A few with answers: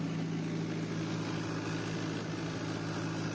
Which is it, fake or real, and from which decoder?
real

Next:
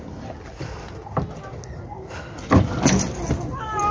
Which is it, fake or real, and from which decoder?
real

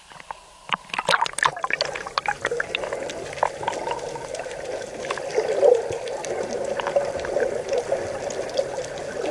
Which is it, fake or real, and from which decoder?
real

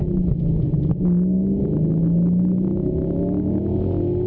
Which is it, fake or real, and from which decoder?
real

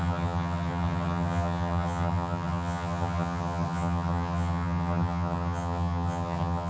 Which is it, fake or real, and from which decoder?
fake, vocoder, HiFi-GAN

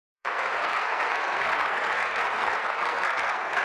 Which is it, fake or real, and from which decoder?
fake, codec, SNAC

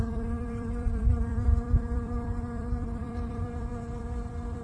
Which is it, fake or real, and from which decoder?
fake, vocoder, BigVGAN v2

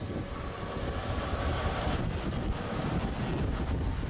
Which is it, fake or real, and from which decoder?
real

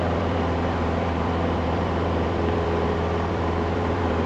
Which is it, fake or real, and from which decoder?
fake, vocoder, BigVGAN v2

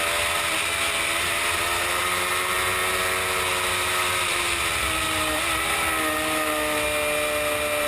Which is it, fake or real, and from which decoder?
real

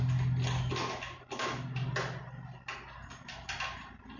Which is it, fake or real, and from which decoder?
real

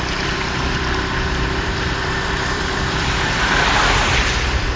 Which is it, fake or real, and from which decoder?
fake, vocoder, BigVGAN v2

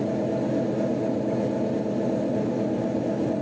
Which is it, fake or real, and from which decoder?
real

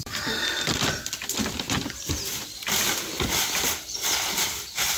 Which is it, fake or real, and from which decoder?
fake, vocoder, BigVGAN v2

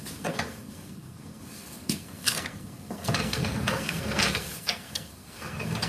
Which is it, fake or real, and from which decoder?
fake, codec, SNAC